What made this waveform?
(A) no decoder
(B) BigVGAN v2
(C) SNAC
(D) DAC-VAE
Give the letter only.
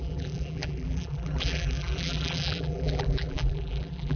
B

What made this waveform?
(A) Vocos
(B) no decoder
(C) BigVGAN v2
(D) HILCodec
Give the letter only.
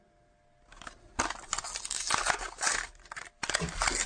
B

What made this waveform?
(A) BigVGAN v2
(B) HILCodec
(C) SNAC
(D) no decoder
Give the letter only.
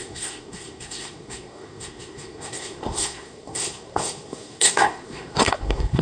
C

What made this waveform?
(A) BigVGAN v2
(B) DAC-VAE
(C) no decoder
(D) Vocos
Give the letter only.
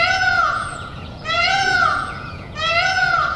D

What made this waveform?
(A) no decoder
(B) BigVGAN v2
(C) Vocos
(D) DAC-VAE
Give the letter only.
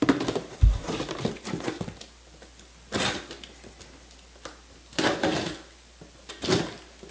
A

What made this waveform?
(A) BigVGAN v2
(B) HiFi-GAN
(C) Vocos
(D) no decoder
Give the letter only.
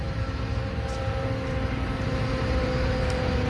A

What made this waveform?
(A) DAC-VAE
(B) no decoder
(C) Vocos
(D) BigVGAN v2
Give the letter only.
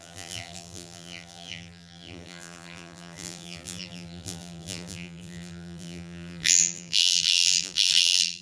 D